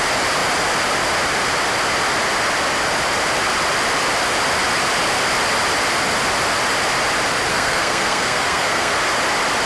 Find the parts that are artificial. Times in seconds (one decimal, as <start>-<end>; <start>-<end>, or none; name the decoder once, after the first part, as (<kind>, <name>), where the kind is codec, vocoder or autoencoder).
7.5-8.9 (codec, SNAC)